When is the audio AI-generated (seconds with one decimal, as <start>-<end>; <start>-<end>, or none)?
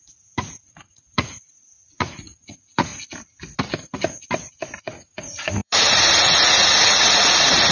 0.0-2.9; 4.8-7.7